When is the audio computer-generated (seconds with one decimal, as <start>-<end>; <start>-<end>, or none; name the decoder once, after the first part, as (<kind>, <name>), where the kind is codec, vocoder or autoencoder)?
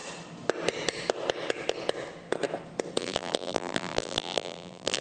3.0-5.0 (vocoder, BigVGAN v2)